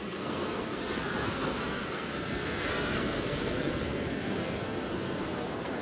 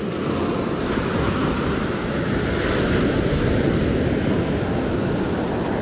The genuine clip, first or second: second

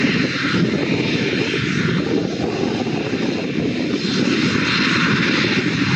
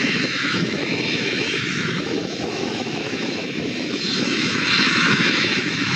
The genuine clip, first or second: first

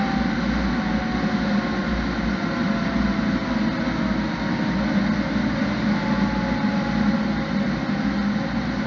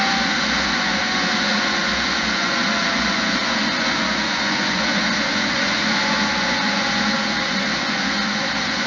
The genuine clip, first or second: first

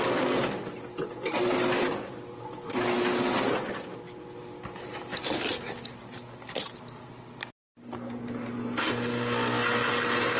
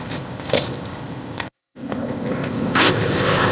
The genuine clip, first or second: first